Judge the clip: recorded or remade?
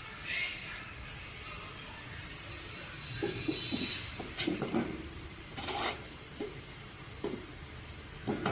remade